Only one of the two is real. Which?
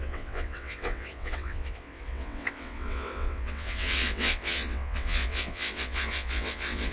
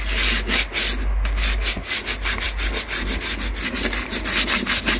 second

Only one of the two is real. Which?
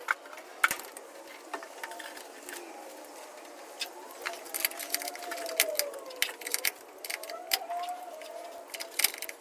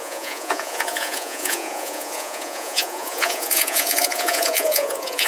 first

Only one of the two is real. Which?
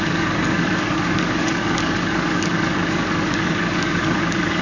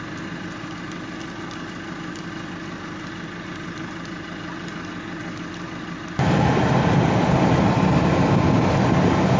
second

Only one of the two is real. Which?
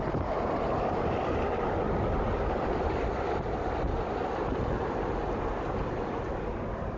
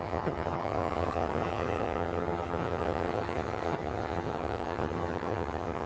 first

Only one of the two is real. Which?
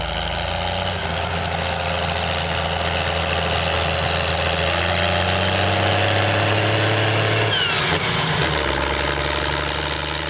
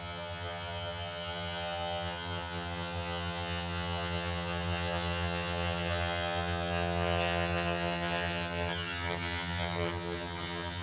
first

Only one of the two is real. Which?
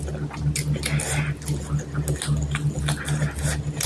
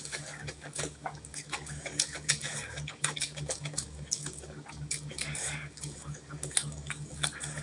first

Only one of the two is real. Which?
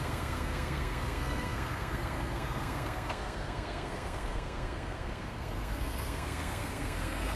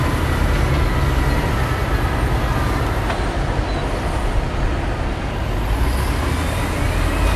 second